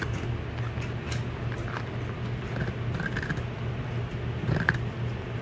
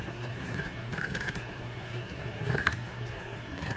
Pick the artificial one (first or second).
second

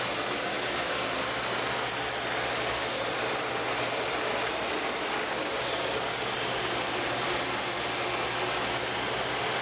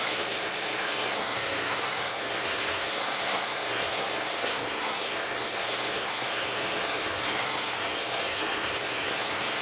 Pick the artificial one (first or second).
second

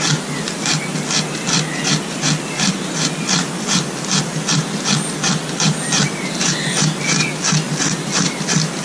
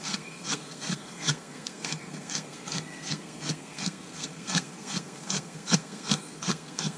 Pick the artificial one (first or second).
second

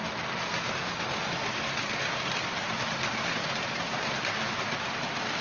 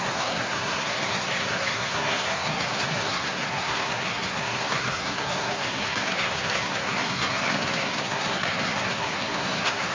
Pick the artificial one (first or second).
second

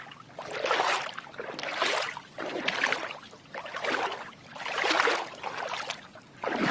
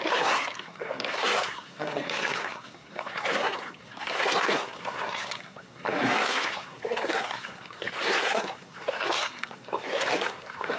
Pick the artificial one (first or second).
second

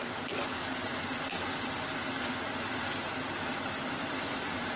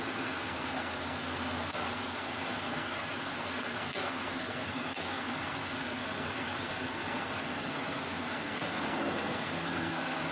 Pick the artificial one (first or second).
second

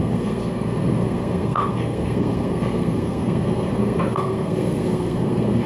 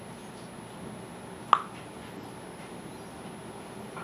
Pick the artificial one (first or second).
first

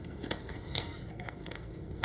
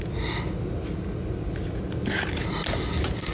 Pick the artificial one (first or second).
first